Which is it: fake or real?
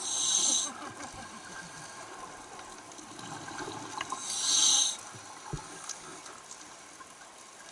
real